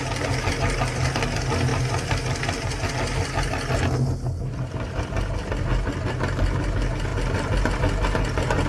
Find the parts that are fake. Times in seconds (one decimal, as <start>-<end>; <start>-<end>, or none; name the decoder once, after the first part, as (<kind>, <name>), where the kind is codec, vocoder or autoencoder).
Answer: none